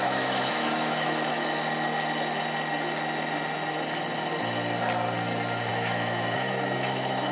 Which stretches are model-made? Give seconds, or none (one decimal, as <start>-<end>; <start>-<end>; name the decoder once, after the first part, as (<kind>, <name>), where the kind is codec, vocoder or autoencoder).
0.0-1.3 (autoencoder, DAC-VAE); 5.7-7.3